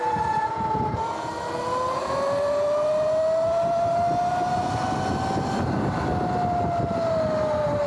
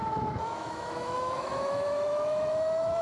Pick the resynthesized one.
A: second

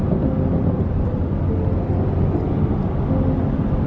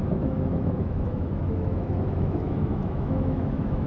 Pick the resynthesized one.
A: second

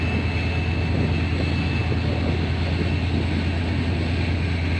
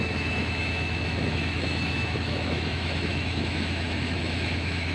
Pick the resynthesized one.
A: second